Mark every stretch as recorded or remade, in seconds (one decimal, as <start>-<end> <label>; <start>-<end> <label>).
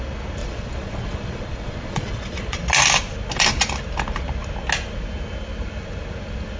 0.0-0.4 recorded; 0.4-2.6 remade; 2.6-6.6 recorded